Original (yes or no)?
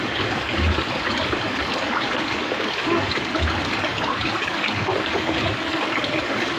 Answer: no